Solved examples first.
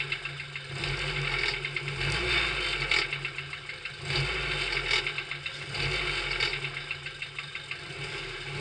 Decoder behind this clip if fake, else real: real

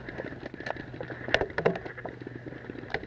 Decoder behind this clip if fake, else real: real